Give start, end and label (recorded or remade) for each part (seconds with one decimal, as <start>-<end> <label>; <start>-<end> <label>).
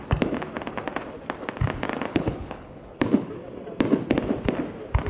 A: 0.0-2.1 recorded; 2.1-3.3 remade; 3.3-5.1 recorded